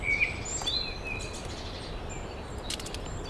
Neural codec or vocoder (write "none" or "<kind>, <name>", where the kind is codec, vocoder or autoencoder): none